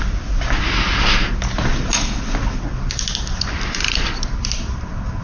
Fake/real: real